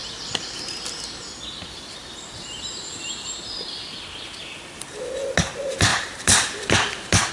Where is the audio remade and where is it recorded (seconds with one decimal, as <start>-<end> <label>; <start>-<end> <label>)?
0.0-5.9 recorded; 5.9-7.3 remade